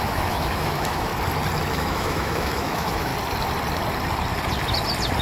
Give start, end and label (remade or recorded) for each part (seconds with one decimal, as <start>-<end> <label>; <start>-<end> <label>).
0.0-1.1 remade; 1.1-1.7 recorded; 1.7-3.1 remade; 3.1-5.2 recorded